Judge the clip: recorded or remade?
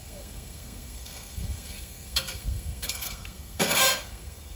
remade